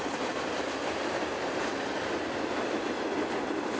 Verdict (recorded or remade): recorded